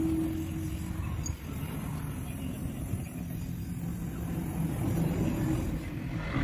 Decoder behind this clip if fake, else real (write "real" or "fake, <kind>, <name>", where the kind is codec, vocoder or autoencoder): real